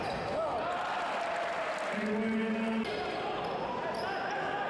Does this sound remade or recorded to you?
recorded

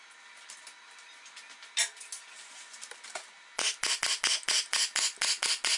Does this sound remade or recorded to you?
recorded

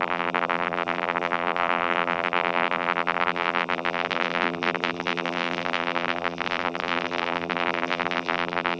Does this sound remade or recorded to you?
remade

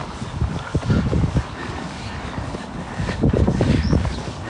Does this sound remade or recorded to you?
remade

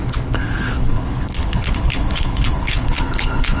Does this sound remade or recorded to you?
remade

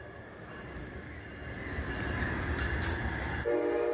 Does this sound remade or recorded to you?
recorded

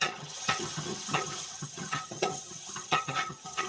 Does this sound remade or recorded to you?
remade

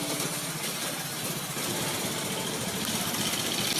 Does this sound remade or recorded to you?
recorded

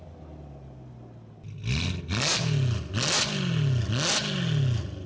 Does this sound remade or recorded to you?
recorded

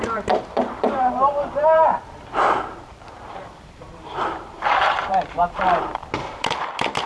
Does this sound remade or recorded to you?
remade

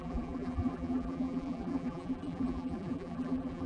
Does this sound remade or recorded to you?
remade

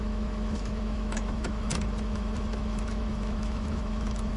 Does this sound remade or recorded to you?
remade